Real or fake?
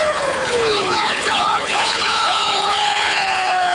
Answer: fake